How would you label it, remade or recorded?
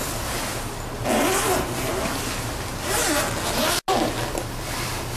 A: recorded